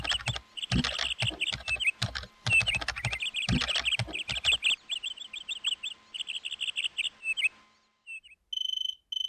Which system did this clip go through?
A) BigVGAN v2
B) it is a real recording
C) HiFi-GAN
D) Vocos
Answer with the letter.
B